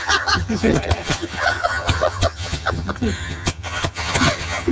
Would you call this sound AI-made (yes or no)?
yes